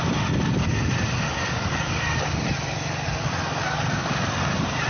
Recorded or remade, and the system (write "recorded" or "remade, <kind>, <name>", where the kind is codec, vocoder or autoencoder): recorded